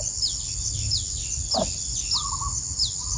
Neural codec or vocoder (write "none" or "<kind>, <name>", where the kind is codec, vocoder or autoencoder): none